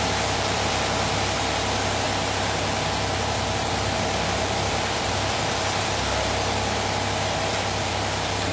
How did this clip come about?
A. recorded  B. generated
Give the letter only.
B